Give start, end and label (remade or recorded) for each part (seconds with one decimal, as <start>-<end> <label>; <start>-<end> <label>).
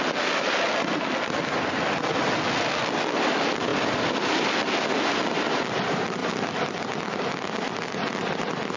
0.0-3.7 recorded; 3.7-4.4 remade; 4.4-6.2 recorded; 6.2-6.8 remade; 6.8-8.8 recorded